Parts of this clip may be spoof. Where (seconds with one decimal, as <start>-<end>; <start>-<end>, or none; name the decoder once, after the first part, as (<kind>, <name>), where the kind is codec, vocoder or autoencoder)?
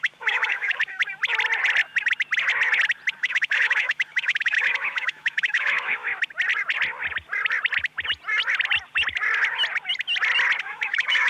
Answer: 0.0-1.0 (autoencoder, DAC-VAE); 3.2-6.1; 10.6-11.3